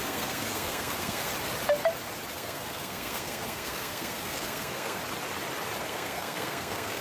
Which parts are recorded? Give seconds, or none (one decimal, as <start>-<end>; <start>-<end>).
1.3-2.3; 5.0-5.8